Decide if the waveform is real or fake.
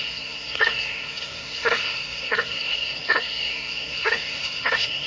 fake